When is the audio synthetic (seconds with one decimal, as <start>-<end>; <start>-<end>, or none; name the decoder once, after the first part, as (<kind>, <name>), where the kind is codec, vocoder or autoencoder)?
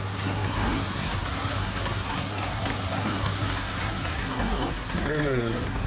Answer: 0.0-5.9 (codec, SNAC)